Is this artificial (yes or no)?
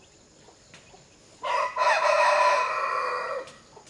no